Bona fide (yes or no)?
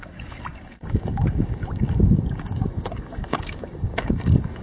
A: no